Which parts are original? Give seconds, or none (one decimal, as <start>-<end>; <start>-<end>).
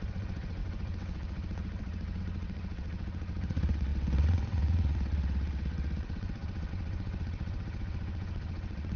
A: none